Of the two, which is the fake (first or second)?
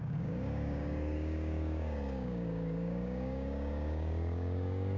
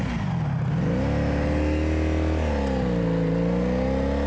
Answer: first